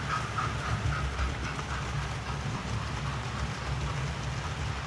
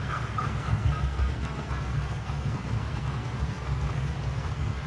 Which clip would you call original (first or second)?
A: first